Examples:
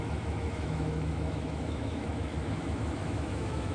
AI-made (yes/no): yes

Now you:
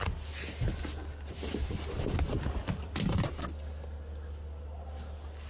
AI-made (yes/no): no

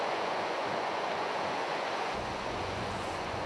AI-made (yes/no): yes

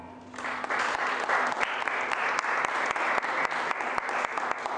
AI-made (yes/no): no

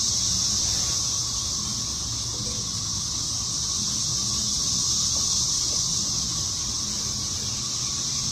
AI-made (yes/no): no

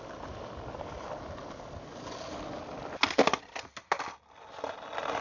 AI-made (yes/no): no